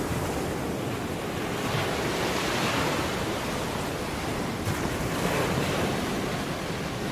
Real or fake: real